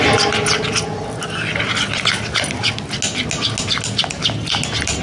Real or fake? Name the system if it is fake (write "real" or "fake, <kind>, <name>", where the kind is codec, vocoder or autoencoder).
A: real